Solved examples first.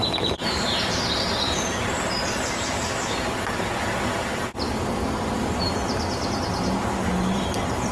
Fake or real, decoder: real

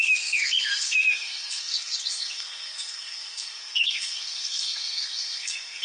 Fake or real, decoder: fake, codec, SNAC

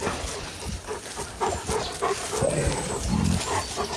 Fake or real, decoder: real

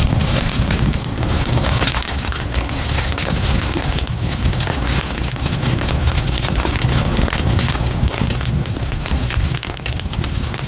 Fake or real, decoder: fake, codec, SNAC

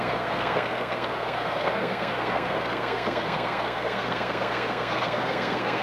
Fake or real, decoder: fake, codec, SNAC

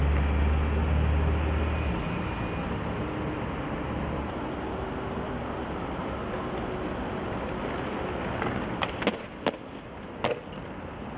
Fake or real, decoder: real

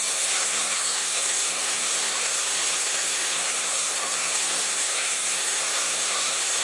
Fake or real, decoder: fake, codec, SNAC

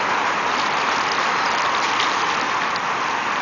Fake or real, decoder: real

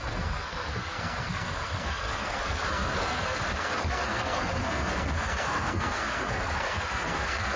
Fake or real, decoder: fake, codec, SNAC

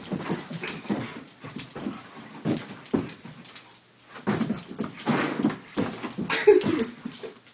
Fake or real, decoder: real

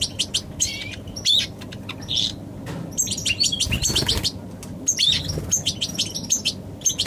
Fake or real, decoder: real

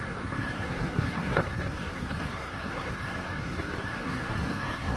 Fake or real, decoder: fake, codec, SNAC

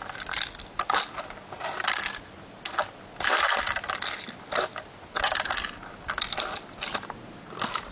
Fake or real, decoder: real